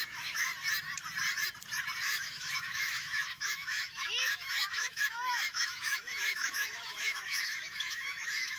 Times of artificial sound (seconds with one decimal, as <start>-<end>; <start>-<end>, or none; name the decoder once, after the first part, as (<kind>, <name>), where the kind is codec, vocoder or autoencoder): 0.0-0.5 (autoencoder, DAC-VAE); 2.0-8.6